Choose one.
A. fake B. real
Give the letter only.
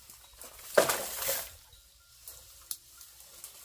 B